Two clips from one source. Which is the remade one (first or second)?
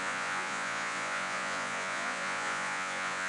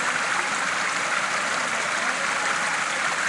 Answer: first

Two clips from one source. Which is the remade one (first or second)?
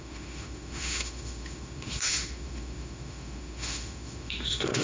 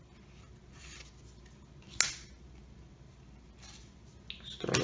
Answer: first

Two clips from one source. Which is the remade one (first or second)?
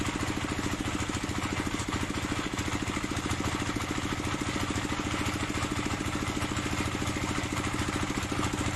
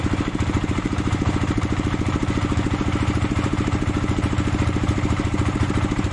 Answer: second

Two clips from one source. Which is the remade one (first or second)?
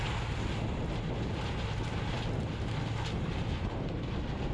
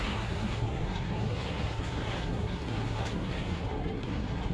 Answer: second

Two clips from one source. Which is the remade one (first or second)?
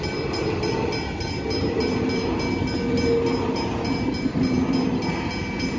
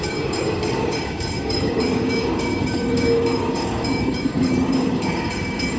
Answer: second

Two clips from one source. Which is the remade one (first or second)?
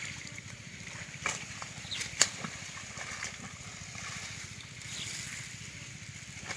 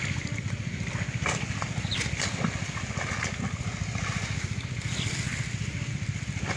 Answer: first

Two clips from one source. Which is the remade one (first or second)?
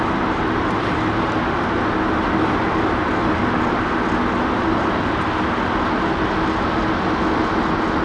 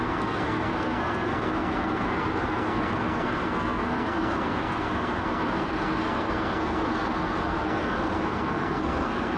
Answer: second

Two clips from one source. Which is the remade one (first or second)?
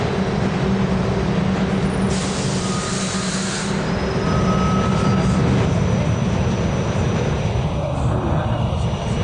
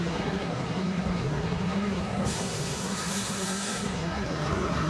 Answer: second